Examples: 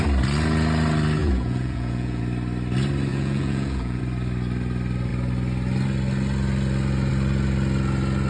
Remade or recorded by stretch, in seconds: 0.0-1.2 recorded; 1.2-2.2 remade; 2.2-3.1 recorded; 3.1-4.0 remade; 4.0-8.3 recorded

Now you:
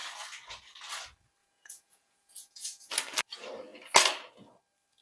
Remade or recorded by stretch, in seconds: 0.0-1.4 recorded; 1.4-2.9 remade; 2.9-5.0 recorded

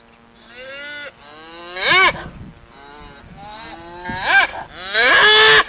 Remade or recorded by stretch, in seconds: 0.0-5.7 recorded